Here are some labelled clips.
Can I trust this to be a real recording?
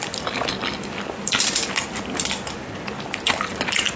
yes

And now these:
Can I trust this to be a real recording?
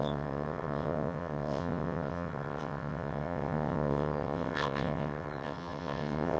no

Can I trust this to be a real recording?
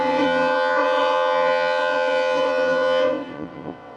no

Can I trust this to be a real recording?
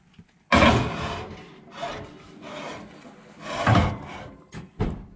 yes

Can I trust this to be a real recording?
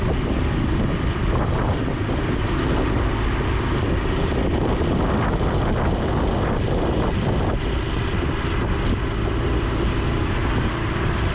yes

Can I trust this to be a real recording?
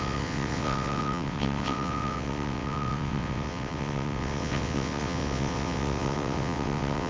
no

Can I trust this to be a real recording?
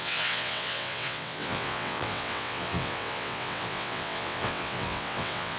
no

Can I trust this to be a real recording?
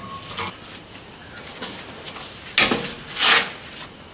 yes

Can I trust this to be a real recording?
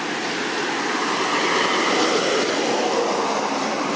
yes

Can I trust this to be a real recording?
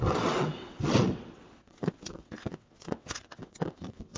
no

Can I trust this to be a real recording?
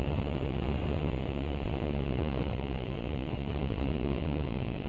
no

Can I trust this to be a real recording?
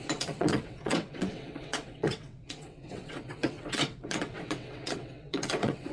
no